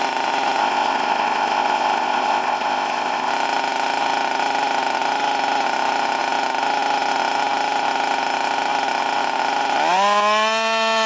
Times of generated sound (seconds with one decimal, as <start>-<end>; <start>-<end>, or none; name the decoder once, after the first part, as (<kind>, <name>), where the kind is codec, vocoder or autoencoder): 0.6-3.3 (codec, ZipCodec)